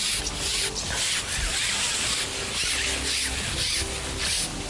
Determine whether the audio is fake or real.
real